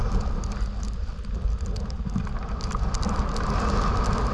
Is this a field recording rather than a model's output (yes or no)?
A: yes